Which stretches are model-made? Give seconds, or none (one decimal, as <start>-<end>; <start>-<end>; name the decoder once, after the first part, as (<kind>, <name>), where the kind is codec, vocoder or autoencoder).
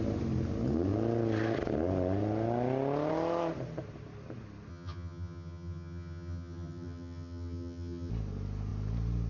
4.7-8.1 (vocoder, HiFi-GAN)